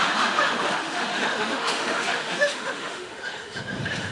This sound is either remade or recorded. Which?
remade